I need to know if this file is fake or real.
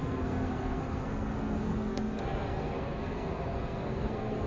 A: fake